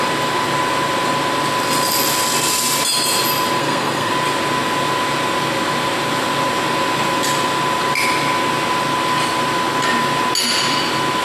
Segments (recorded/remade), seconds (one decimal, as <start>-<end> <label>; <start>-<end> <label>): 0.0-3.6 recorded; 3.6-4.1 remade; 4.1-11.2 recorded